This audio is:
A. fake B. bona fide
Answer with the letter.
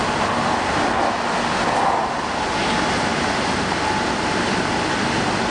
B